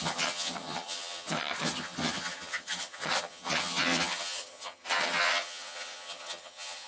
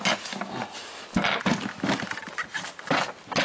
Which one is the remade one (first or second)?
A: first